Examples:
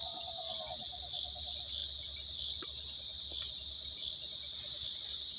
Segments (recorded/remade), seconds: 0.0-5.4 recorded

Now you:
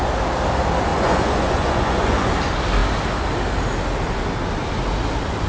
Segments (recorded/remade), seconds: 0.0-0.9 recorded; 0.9-2.3 remade; 2.3-5.5 recorded

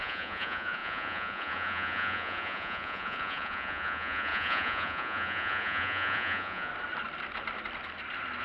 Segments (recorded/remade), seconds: 0.0-6.7 remade; 6.7-8.4 recorded

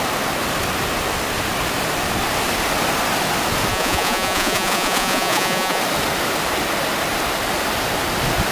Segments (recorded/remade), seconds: 0.0-3.7 recorded; 3.7-5.8 remade; 5.8-8.5 recorded

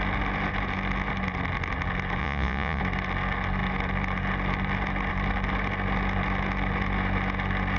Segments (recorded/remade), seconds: 0.0-2.2 recorded; 2.2-2.8 remade; 2.8-7.8 recorded